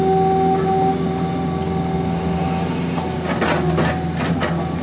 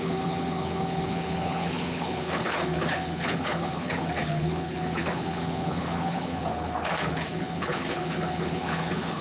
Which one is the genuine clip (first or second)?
first